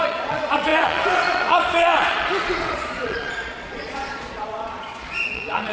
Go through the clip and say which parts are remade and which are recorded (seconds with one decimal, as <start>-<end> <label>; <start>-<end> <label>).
0.0-5.7 remade